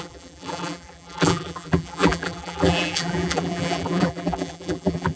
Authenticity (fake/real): fake